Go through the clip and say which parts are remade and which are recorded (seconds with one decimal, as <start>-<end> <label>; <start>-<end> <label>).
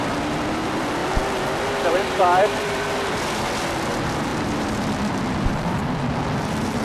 0.0-1.0 remade; 1.0-1.9 recorded; 1.9-6.8 remade